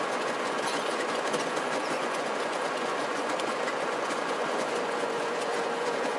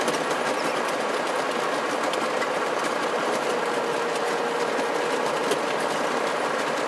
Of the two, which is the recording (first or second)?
second